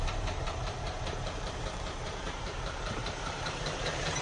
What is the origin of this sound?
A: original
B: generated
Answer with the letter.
B